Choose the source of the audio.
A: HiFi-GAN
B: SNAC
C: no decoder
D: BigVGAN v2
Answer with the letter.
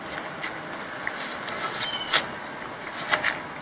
C